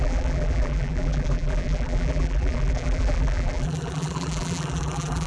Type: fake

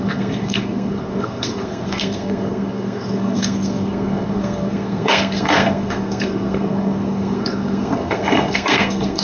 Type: fake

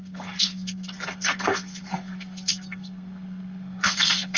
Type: fake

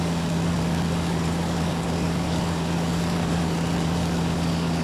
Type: fake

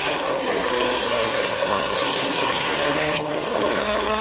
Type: fake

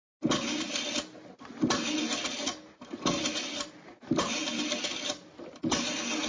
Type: real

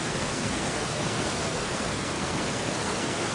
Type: fake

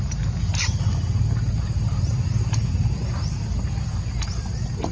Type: real